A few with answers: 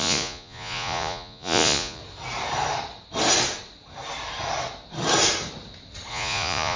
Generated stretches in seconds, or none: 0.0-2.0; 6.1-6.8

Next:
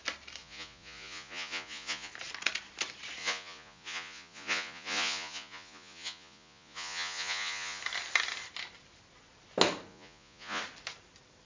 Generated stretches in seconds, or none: 0.4-2.1; 3.2-7.8; 9.9-10.6

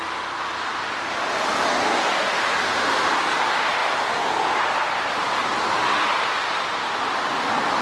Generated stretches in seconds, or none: none

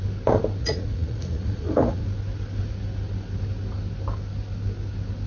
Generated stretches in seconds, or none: 0.6-2.0

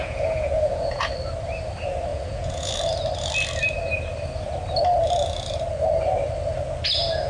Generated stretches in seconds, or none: 0.0-1.1; 2.1-2.7

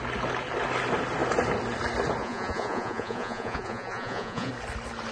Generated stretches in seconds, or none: 2.2-4.5

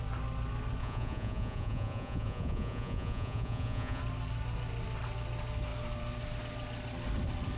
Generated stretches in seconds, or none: 0.8-4.0

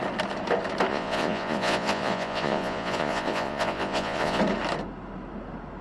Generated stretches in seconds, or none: 0.9-4.4